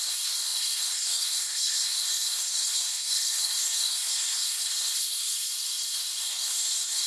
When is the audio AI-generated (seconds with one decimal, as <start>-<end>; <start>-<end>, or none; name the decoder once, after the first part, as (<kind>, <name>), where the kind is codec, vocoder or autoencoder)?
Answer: 0.0-7.1 (codec, SNAC)